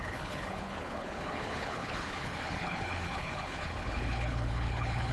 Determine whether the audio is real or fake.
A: fake